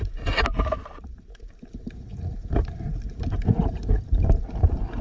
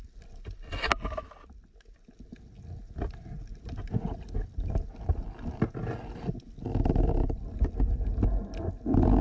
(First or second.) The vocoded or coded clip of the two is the first